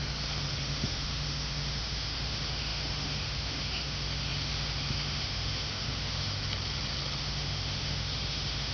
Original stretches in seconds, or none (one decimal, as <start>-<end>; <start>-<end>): 0.0-0.6; 6.4-7.2